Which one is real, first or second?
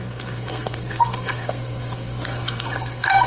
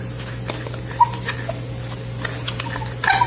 second